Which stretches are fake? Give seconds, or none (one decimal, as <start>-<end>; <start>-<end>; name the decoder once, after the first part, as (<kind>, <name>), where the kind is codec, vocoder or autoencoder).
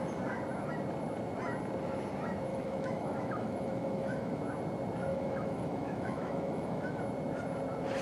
2.5-4.4 (autoencoder, DAC-VAE); 5.1-7.0